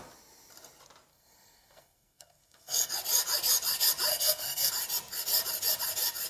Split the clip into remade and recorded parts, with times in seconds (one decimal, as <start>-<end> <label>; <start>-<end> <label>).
0.0-1.1 recorded; 1.1-2.9 remade; 2.9-4.1 recorded; 4.1-4.7 remade; 4.7-6.3 recorded